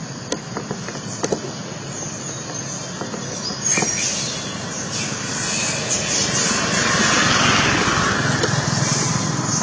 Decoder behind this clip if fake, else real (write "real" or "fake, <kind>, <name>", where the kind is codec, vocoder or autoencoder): real